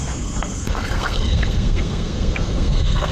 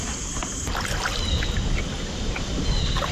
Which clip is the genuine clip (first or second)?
second